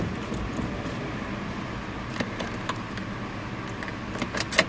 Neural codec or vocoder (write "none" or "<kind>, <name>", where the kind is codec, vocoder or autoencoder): none